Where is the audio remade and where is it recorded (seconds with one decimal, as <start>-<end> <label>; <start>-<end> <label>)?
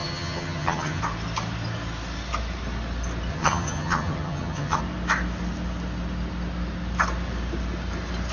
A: 0.0-1.0 remade; 1.0-3.3 recorded; 3.3-4.8 remade; 4.8-8.3 recorded